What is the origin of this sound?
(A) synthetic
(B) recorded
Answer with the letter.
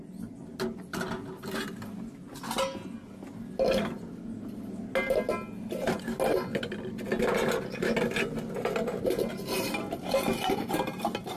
B